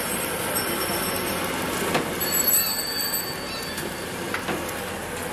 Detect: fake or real real